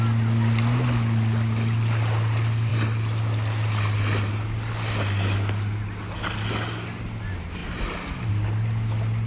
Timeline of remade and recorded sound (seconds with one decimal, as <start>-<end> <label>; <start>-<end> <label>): 0.0-9.3 recorded